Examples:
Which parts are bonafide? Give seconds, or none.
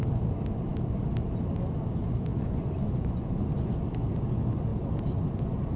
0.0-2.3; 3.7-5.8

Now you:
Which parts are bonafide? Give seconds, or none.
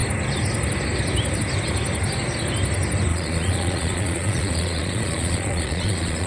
0.0-3.1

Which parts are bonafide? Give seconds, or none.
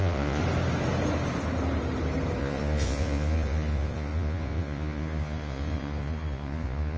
0.4-2.4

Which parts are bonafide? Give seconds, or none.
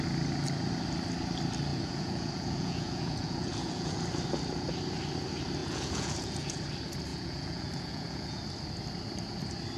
0.0-1.7; 4.0-5.6; 6.6-7.1; 8.4-9.8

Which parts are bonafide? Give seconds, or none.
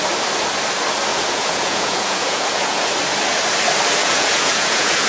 0.0-1.1; 2.9-4.0